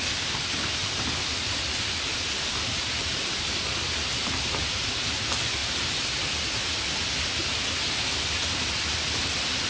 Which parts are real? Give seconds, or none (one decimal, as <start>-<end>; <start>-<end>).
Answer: 0.0-9.7